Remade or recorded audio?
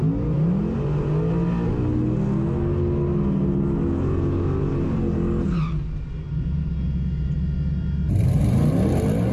recorded